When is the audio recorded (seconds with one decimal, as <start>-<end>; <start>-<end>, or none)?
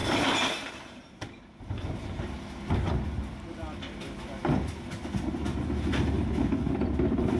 2.2-7.4